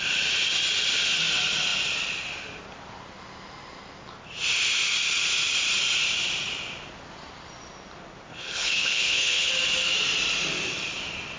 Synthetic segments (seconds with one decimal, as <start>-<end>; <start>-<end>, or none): 8.3-9.5